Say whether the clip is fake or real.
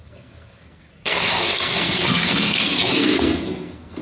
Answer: fake